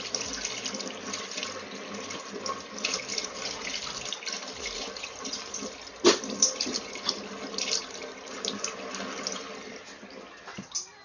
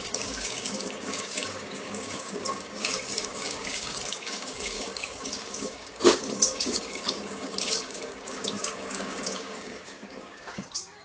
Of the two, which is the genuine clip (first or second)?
first